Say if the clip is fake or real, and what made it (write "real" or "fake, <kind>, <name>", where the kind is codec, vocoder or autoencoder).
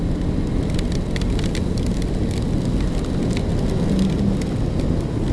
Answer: real